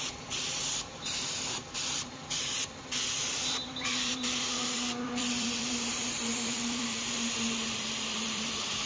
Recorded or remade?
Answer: remade